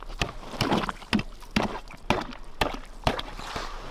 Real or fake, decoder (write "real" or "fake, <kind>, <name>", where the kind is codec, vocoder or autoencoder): real